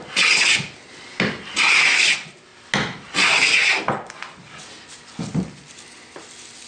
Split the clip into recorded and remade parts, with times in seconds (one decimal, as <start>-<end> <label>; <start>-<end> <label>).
0.0-6.7 recorded